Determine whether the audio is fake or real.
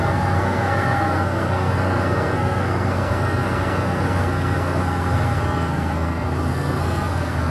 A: fake